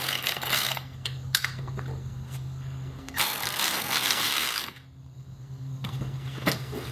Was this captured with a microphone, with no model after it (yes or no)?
no